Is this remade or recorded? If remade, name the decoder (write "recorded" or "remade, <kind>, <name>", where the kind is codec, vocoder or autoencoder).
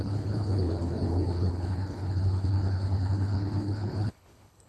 remade, codec, HILCodec